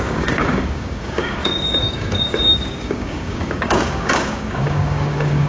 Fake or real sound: fake